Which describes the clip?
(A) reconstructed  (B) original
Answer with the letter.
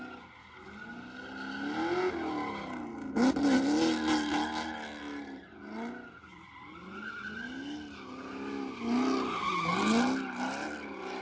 B